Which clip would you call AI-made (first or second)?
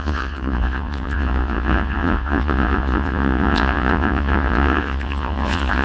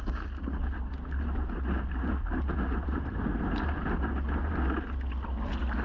first